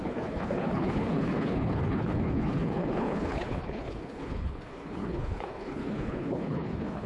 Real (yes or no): no